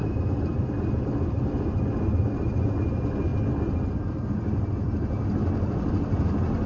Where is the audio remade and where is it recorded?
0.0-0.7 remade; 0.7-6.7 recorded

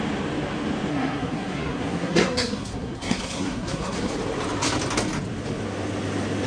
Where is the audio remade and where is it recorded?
0.0-0.9 recorded; 0.9-4.1 remade; 4.1-6.5 recorded

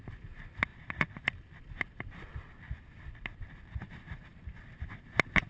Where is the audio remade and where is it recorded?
0.0-5.5 recorded

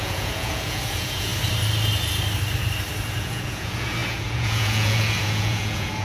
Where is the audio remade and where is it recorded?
0.0-1.3 remade; 1.3-3.2 recorded; 3.2-6.0 remade

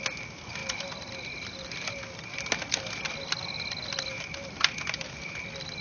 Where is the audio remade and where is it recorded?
0.0-5.8 recorded

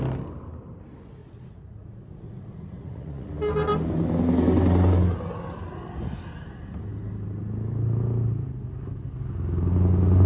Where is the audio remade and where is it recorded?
0.0-1.2 recorded; 1.2-3.3 remade; 3.3-10.3 recorded

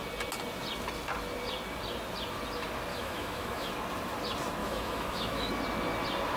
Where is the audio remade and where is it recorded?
0.0-2.9 recorded; 2.9-3.7 remade; 3.7-4.6 recorded; 4.6-5.5 remade; 5.5-6.4 recorded

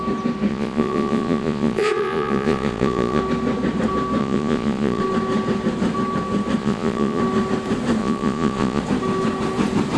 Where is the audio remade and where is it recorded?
0.0-0.5 recorded; 0.5-3.2 remade; 3.2-4.2 recorded; 4.2-5.0 remade; 5.0-6.6 recorded; 6.6-7.2 remade; 7.2-8.0 recorded; 8.0-8.8 remade; 8.8-10.0 recorded